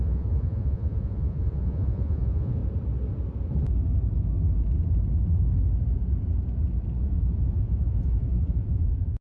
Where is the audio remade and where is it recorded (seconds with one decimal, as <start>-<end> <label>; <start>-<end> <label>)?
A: 0.0-2.6 remade; 2.6-7.0 recorded; 7.0-9.2 remade

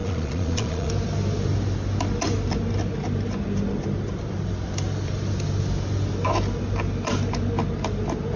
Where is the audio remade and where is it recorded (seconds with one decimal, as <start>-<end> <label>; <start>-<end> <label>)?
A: 0.0-0.9 remade; 0.9-8.4 recorded

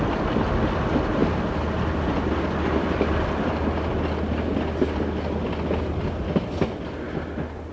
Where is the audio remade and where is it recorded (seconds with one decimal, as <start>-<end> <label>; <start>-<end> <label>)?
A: 0.0-7.7 recorded